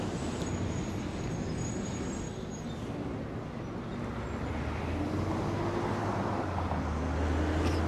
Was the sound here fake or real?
real